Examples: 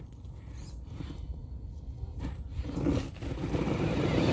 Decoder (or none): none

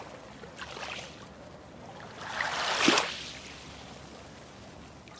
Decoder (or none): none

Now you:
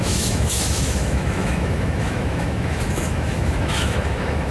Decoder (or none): autoencoder, DAC-VAE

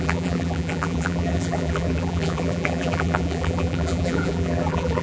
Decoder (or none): vocoder, BigVGAN v2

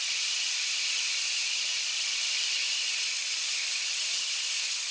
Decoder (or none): none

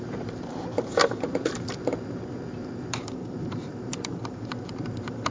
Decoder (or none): vocoder, BigVGAN v2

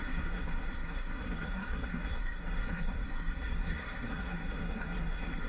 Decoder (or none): codec, SNAC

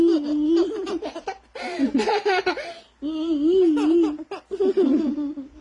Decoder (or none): none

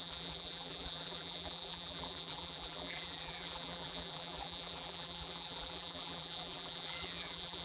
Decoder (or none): vocoder, BigVGAN v2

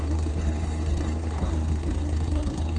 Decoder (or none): codec, SNAC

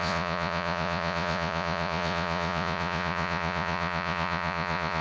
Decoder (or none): vocoder, Vocos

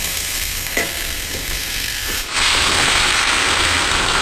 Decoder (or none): codec, SNAC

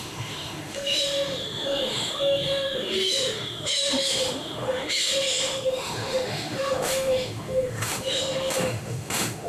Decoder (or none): autoencoder, DAC-VAE